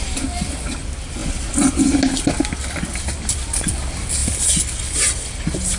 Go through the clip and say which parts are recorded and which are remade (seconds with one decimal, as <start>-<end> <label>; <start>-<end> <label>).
0.0-5.8 recorded